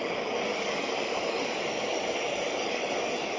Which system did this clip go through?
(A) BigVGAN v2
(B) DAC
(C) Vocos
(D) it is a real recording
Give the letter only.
B